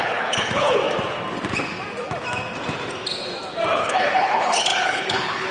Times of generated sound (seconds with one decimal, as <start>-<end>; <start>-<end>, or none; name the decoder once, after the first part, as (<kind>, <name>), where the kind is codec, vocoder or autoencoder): 0.0-0.8 (codec, HILCodec); 3.7-5.5